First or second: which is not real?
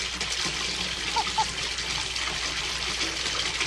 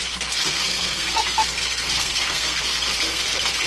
second